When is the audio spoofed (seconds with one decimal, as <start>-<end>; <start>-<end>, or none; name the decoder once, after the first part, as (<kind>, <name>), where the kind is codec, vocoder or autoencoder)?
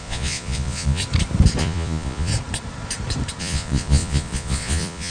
0.0-1.0 (vocoder, Vocos); 1.6-2.3; 3.4-5.1